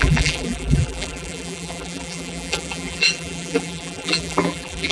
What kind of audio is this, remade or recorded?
remade